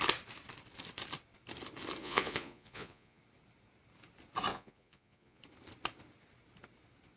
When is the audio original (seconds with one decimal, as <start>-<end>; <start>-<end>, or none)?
0.0-2.0; 3.2-4.5; 5.4-7.2